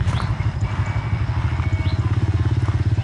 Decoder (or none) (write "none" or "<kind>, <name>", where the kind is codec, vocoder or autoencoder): none